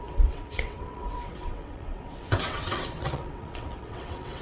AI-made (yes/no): yes